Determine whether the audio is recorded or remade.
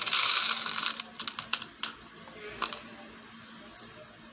recorded